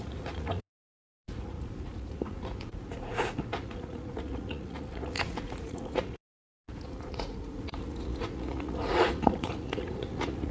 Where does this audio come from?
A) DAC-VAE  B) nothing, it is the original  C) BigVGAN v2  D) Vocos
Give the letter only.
D